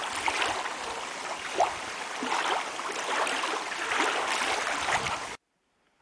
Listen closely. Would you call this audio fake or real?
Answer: real